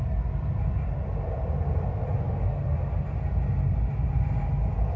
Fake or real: real